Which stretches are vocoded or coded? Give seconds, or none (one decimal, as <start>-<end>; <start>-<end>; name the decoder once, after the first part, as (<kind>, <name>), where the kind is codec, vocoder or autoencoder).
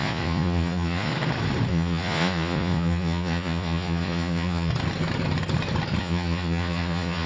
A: 0.0-1.1 (vocoder, Vocos); 1.7-4.7; 6.0-7.3